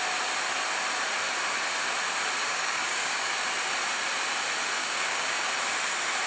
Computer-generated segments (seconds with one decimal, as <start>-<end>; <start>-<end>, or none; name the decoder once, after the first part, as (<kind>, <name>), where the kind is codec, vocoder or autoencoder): 2.4-3.3 (codec, DAC); 4.8-5.5